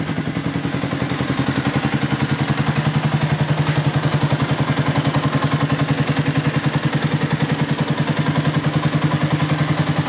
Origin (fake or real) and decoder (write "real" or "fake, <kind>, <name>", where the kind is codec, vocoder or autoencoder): real